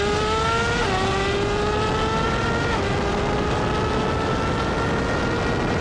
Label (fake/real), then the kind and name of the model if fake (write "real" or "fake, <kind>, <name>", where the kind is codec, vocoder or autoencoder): real